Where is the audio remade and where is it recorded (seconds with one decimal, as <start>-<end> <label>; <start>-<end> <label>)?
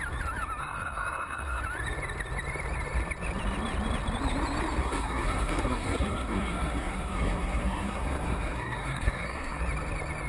0.0-0.6 recorded; 0.6-1.6 remade; 1.6-4.8 recorded; 4.8-9.6 remade; 9.6-10.3 recorded